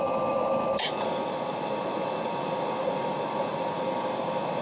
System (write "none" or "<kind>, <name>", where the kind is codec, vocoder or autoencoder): none